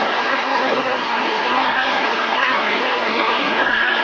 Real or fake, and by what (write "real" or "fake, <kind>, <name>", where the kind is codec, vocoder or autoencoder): fake, codec, SNAC